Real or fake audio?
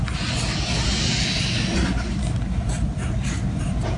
real